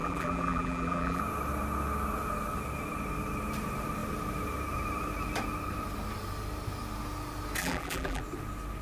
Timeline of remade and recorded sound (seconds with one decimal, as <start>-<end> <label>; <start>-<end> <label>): 0.0-1.2 remade; 1.2-7.6 recorded; 7.6-8.2 remade; 8.2-8.8 recorded